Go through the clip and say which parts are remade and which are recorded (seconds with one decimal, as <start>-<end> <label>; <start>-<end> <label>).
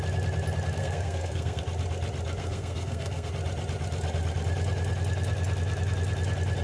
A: 0.0-0.8 recorded; 0.8-1.6 remade; 1.6-2.4 recorded; 2.4-3.3 remade; 3.3-6.6 recorded